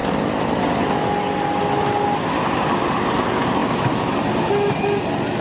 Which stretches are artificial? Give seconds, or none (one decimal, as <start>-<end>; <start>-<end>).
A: none